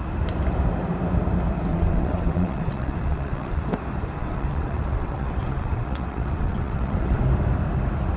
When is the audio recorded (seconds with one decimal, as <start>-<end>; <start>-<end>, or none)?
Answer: 0.0-1.7; 3.6-4.2; 7.2-8.2